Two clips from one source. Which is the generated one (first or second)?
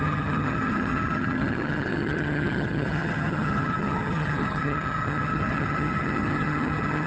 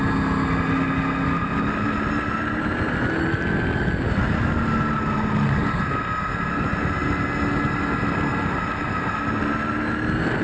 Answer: first